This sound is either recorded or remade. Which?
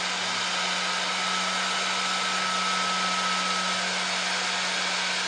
recorded